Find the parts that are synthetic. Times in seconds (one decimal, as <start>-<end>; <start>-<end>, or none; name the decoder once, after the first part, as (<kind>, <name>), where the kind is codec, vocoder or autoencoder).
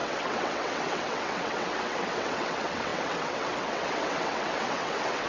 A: 0.0-5.3 (vocoder, WaveNeXt)